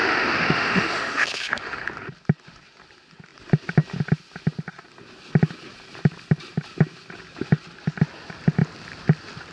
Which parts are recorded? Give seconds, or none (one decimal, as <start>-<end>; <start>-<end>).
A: 1.9-9.5